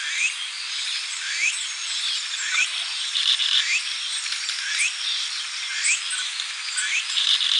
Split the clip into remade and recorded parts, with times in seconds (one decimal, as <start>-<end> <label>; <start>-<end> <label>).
0.0-7.6 recorded